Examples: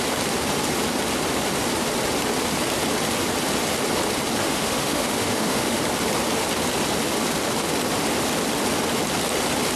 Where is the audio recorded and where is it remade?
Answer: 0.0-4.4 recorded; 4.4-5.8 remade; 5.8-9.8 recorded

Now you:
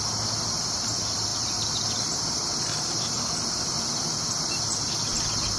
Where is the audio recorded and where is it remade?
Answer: 0.0-1.3 recorded; 1.3-3.9 remade; 3.9-5.6 recorded

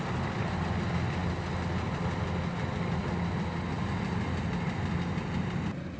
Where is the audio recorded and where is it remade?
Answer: 0.0-6.0 recorded

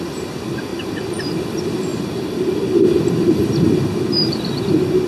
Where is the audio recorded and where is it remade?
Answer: 0.0-0.7 recorded; 0.7-1.4 remade; 1.4-1.9 recorded; 1.9-4.6 remade; 4.6-5.1 recorded

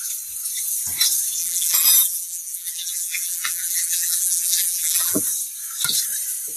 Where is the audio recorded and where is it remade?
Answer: 0.0-1.4 recorded; 1.4-5.2 remade; 5.2-6.6 recorded

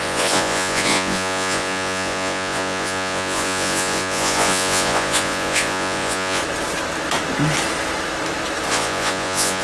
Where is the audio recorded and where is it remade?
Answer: 0.0-6.4 remade; 6.4-8.7 recorded; 8.7-9.6 remade